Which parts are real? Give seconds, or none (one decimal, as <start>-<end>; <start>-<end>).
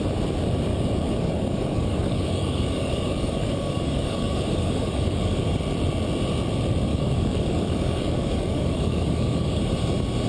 0.0-0.7; 5.6-6.9; 9.6-10.3